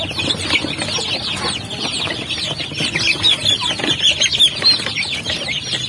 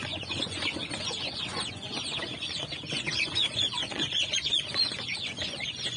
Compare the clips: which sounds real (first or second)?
first